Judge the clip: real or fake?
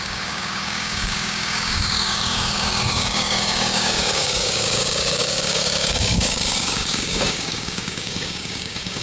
fake